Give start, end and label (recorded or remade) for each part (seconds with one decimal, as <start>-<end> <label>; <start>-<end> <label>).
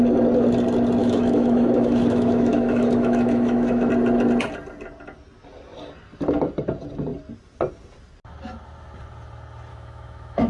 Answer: 0.0-1.0 recorded; 1.0-3.9 remade; 3.9-9.7 recorded; 9.7-10.5 remade